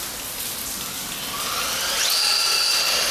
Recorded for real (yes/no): yes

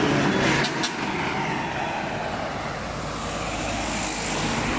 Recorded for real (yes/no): yes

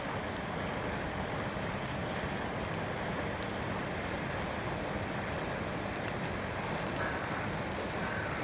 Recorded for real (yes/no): yes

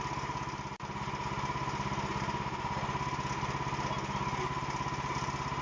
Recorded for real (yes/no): yes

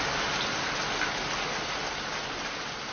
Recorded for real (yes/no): yes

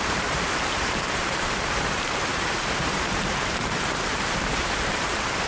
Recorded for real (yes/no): no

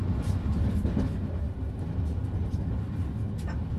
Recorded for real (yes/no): yes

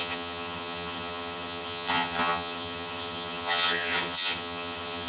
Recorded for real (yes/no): no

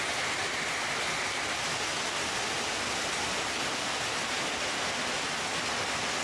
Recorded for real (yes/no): yes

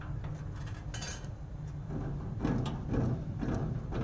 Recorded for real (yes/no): yes